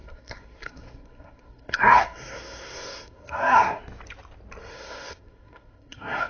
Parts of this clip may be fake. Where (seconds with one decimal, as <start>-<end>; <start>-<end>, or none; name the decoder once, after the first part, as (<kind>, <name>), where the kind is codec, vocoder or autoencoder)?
0.0-3.8 (codec, SNAC); 4.7-6.3